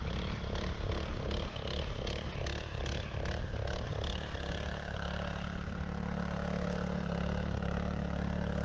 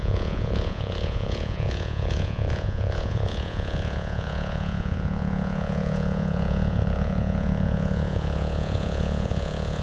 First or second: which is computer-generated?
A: second